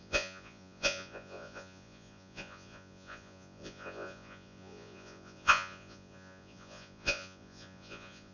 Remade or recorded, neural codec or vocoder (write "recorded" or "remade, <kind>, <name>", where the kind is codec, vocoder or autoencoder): remade, vocoder, Vocos